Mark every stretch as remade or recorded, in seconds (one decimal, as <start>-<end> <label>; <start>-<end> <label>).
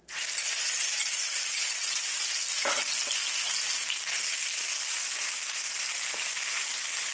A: 0.0-7.1 recorded